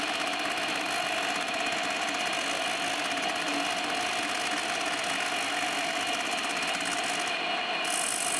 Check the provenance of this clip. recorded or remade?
recorded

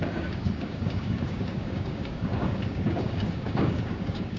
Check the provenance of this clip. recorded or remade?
remade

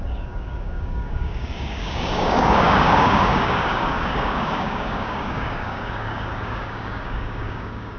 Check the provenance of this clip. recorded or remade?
remade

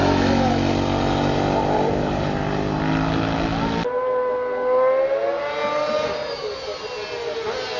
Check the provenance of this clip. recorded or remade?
recorded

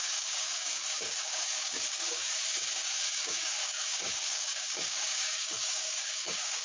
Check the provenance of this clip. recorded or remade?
remade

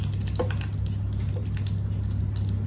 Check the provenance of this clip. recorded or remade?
recorded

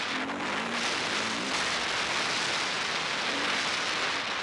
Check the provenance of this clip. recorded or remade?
recorded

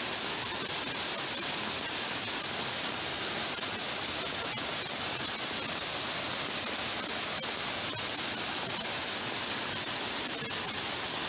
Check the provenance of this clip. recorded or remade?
recorded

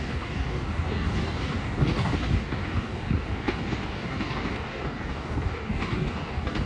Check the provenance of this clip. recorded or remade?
remade